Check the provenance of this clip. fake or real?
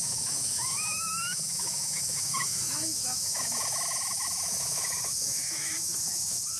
fake